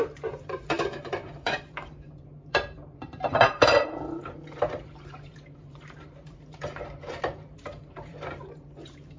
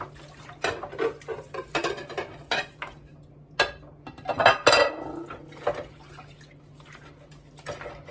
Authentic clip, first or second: second